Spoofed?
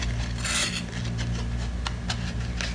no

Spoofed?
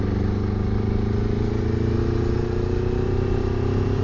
no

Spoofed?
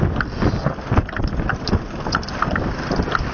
no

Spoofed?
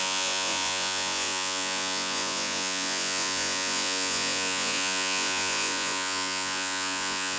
yes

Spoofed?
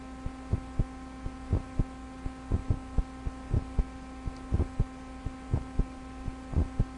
no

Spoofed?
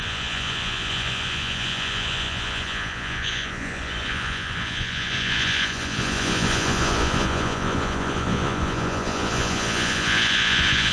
yes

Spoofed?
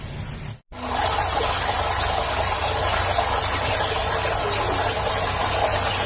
no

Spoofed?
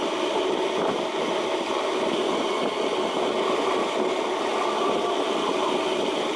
no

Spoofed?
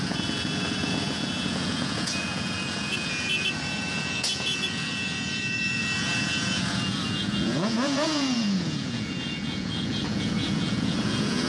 yes